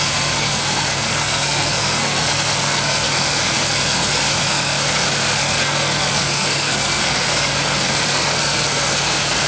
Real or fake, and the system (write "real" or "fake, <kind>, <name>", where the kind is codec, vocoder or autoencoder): fake, codec, SNAC